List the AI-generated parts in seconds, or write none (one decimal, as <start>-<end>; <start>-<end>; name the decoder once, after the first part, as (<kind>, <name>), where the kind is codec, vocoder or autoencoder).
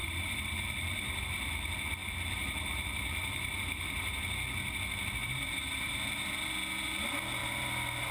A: 0.0-1.2 (vocoder, BigVGAN v2); 2.0-4.2; 5.2-5.9; 7.4-8.1